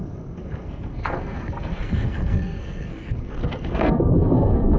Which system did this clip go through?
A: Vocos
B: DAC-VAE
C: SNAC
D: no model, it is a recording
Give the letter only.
C